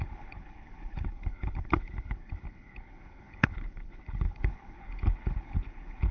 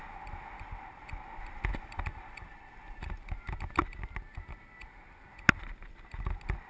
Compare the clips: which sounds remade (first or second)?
first